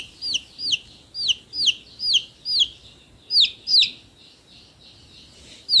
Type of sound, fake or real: real